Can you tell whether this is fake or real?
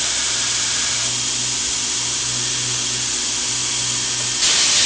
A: real